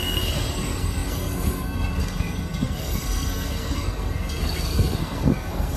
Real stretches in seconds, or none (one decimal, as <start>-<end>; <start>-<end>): none